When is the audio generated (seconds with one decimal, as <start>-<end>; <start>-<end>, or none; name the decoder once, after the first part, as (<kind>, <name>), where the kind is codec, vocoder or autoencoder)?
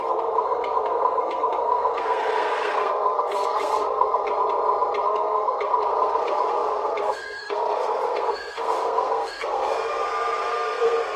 0.0-4.3 (codec, SNAC); 5.0-11.2